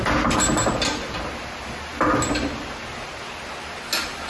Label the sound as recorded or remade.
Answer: recorded